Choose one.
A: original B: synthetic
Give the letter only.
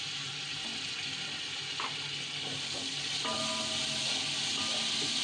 A